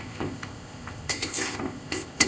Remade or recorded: remade